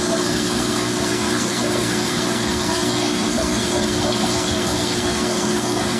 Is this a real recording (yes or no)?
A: no